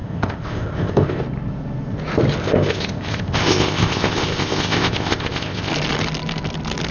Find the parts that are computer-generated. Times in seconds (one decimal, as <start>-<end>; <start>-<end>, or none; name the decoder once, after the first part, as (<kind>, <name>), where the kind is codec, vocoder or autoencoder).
0.0-1.2 (codec, ZipCodec); 2.4-5.7

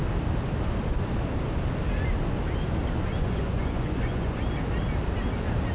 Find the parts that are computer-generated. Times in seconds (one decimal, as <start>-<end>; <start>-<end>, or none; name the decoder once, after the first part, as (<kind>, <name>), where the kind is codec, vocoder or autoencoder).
3.2-4.4 (vocoder, Vocos)

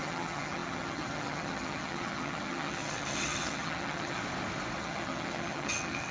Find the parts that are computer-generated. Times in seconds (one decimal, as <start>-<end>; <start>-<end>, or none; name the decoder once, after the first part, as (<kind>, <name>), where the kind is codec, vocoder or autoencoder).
0.0-4.2 (vocoder, HiFi-GAN); 4.8-6.1

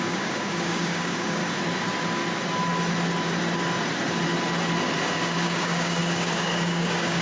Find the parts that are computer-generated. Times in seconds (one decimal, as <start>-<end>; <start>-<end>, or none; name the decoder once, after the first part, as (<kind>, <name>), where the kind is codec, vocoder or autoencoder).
0.0-1.4 (codec, DAC); 5.1-7.2

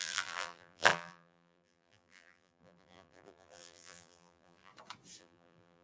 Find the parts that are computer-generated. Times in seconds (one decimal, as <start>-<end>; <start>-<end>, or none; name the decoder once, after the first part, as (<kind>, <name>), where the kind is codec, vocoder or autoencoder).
0.0-4.7 (vocoder, BigVGAN v2); 5.2-5.8

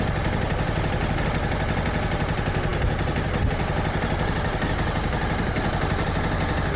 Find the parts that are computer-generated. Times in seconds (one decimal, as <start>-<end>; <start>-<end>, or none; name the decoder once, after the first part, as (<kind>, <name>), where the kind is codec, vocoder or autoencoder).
none

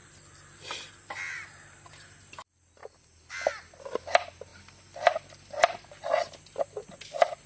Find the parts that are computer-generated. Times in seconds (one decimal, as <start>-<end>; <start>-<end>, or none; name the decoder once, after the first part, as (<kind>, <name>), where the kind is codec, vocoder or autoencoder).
0.0-1.9 (vocoder, BigVGAN v2)